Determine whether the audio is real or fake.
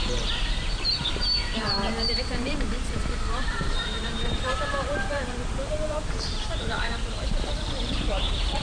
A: fake